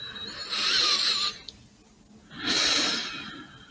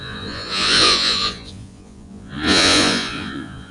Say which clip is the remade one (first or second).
second